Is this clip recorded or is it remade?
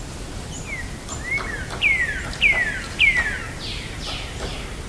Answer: recorded